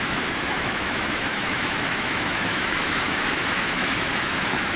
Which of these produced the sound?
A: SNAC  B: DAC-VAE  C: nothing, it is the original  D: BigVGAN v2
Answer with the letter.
B